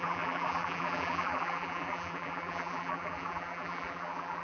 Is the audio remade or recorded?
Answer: remade